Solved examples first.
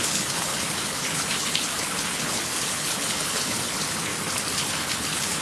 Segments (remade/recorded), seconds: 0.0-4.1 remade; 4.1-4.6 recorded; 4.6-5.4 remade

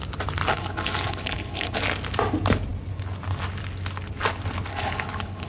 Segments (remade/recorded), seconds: 0.0-0.5 recorded; 0.5-1.8 remade; 1.8-4.7 recorded; 4.7-5.5 remade

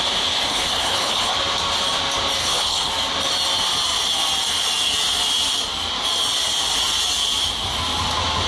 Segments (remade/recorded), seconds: 0.0-0.5 recorded; 0.5-1.3 remade; 1.3-2.4 recorded; 2.4-2.9 remade; 2.9-8.5 recorded

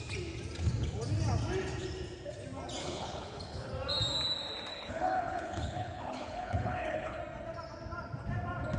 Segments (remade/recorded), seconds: 0.0-2.8 recorded; 2.8-3.7 remade; 3.7-4.7 recorded; 4.7-7.2 remade; 7.2-8.8 recorded

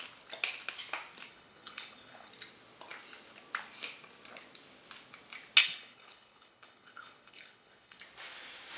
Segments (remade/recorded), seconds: 0.0-1.3 recorded; 1.3-2.3 remade; 2.3-5.6 recorded; 5.6-8.0 remade; 8.0-8.8 recorded

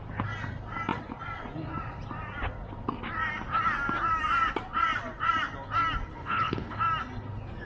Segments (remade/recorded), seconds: 0.0-6.1 recorded; 6.1-6.8 remade; 6.8-7.6 recorded

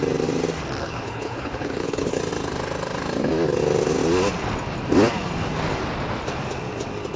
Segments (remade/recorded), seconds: 0.0-0.8 recorded; 0.8-2.2 remade; 2.2-7.2 recorded

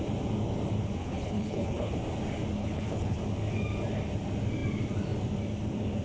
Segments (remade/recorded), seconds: 0.0-1.0 recorded; 1.0-2.0 remade; 2.0-2.6 recorded; 2.6-3.2 remade; 3.2-6.0 recorded